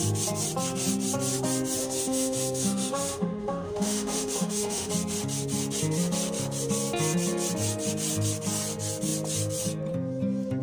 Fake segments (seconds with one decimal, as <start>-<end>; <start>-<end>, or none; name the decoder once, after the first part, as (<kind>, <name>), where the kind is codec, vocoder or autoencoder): 1.8-4.9 (autoencoder, DAC-VAE)